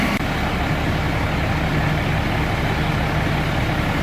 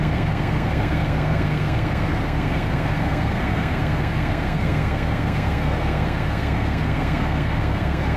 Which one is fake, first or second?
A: second